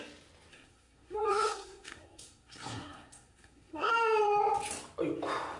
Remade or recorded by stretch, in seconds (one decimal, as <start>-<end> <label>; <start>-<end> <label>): 0.0-0.5 recorded; 0.5-3.9 remade; 3.9-5.6 recorded